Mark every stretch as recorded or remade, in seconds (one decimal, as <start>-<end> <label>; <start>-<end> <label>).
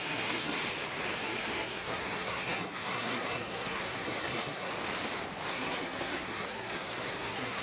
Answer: 0.0-0.6 remade; 0.6-1.2 recorded; 1.2-4.7 remade; 4.7-5.5 recorded; 5.5-7.6 remade